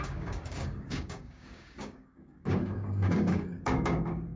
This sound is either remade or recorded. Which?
remade